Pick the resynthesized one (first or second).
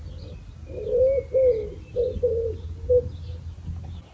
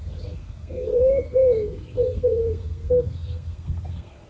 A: second